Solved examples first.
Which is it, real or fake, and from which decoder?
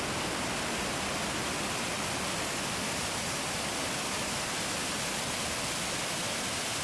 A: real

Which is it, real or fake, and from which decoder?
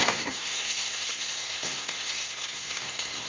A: fake, codec, SNAC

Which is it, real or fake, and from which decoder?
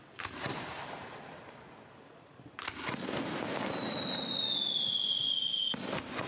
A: real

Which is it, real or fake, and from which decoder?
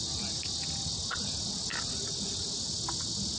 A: real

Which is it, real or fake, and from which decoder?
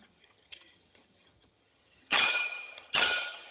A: fake, vocoder, HiFi-GAN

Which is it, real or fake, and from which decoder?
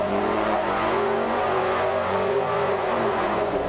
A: fake, vocoder, Vocos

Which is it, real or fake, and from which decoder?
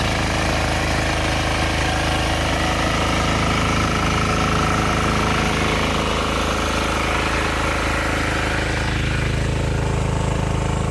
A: real